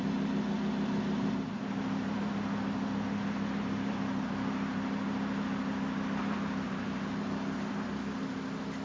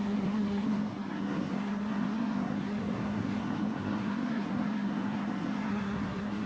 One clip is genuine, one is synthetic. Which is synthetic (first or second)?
second